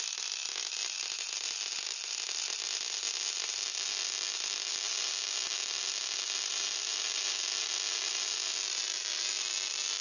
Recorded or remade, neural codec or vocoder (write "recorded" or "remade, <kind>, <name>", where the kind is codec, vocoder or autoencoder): recorded